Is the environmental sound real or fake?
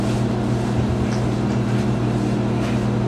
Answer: real